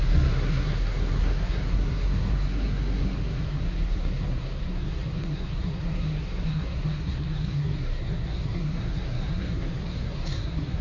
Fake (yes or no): yes